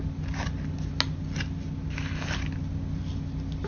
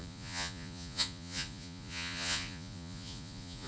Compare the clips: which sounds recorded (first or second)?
first